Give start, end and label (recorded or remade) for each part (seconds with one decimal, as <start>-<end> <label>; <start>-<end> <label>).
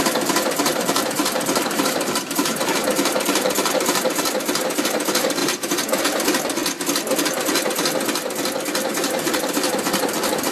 0.0-6.6 remade; 6.6-8.9 recorded; 8.9-10.5 remade